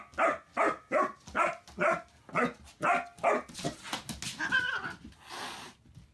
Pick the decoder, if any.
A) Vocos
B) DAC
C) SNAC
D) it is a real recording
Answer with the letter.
D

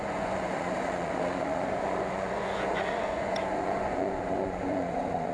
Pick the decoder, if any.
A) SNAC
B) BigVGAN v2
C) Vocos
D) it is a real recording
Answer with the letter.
C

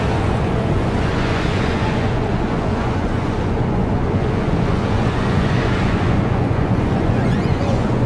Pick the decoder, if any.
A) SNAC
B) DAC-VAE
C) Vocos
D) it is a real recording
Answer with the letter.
C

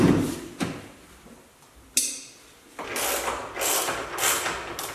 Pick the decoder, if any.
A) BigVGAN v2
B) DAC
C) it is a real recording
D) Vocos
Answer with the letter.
C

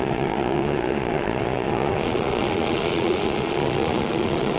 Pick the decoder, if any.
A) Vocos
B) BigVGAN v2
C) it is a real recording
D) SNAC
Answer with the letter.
A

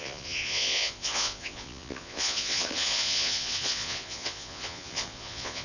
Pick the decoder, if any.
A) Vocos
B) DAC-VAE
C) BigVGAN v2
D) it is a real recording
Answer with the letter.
A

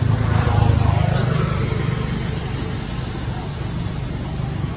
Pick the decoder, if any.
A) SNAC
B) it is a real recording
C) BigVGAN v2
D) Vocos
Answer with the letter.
B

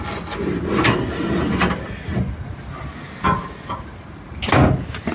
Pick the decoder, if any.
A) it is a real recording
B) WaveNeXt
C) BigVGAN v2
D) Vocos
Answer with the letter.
A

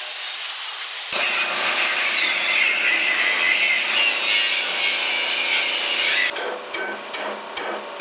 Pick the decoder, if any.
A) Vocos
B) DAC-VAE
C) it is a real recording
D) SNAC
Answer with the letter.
C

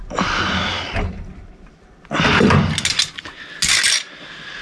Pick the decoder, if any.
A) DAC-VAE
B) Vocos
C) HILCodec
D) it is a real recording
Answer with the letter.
D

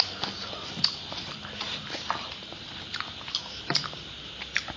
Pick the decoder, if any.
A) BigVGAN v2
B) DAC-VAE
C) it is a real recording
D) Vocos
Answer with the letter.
C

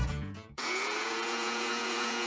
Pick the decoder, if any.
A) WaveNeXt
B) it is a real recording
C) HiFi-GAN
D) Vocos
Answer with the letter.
D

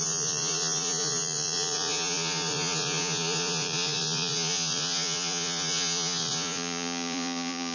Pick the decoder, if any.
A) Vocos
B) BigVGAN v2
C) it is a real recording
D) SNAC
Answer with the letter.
A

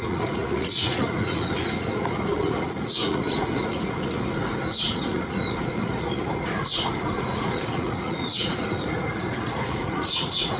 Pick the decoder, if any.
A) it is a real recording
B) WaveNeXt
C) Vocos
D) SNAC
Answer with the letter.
C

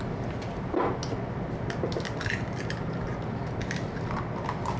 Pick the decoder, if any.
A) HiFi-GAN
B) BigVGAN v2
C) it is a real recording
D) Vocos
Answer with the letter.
C